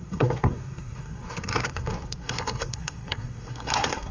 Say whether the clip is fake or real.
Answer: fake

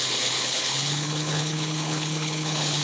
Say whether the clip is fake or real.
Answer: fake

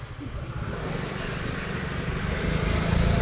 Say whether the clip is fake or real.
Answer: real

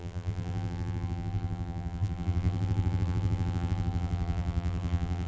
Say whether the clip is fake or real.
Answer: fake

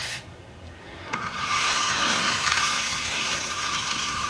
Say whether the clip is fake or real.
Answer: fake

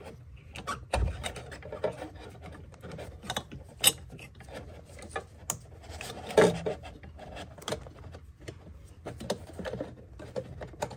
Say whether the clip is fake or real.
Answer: real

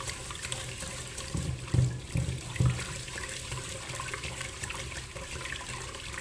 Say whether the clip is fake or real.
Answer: real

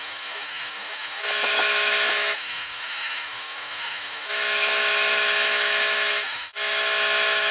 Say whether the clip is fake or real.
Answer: fake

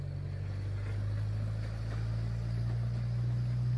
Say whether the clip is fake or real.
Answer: real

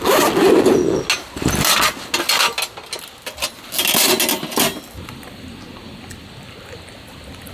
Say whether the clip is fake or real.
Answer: real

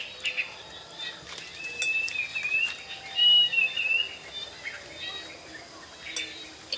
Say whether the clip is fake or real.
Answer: real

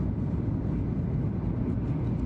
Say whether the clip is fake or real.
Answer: real